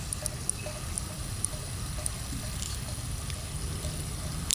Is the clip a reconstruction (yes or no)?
no